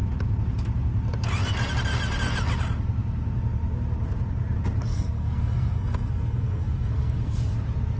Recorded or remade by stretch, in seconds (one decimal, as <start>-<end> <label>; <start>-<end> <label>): 0.0-4.9 recorded; 4.9-7.4 remade; 7.4-8.0 recorded